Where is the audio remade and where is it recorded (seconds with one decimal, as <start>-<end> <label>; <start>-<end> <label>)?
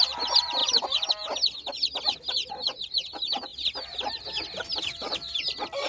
0.0-5.9 recorded